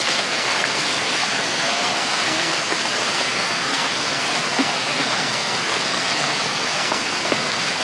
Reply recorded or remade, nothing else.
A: remade